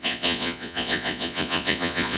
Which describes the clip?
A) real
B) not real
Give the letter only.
B